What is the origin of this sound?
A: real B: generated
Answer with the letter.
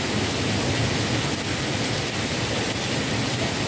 A